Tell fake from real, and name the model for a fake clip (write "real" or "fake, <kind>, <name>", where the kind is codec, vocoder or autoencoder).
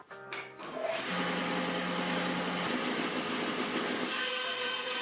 real